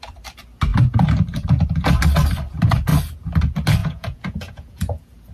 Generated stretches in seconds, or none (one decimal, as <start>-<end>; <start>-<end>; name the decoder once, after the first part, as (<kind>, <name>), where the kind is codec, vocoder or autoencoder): 3.8-5.3 (vocoder, Vocos)